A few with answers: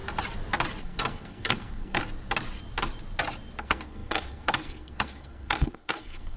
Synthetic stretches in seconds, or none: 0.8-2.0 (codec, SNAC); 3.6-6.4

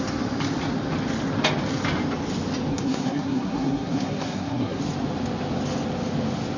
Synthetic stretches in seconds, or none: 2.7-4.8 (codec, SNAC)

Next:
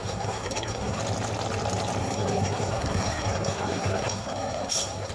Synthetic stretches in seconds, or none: 0.0-1.0 (codec, SNAC); 2.0-5.1

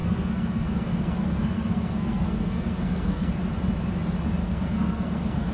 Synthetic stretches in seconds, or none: 0.0-3.3 (codec, SNAC); 4.4-5.5

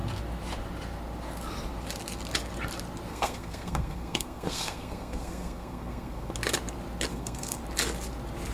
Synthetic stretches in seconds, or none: 3.1-6.3 (codec, SNAC); 7.1-7.6